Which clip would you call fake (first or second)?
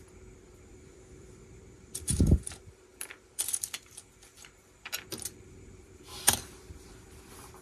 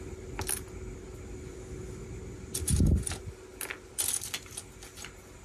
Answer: first